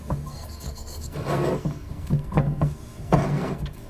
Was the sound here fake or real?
fake